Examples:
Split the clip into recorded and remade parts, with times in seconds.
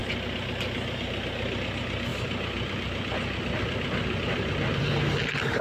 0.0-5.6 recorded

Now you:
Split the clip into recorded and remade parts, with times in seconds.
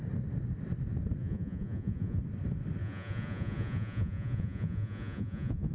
0.0-1.2 recorded; 1.2-2.2 remade; 2.2-2.8 recorded; 2.8-5.7 remade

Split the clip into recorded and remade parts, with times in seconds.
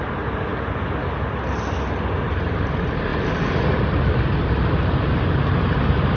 0.0-6.2 recorded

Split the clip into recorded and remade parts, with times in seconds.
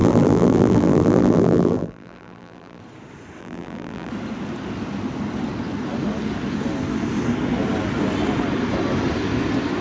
0.0-2.8 remade; 2.8-3.4 recorded; 3.4-4.1 remade; 4.1-9.8 recorded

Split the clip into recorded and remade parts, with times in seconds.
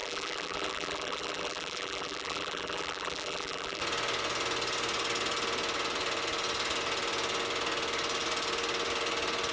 0.0-3.8 remade; 3.8-9.5 recorded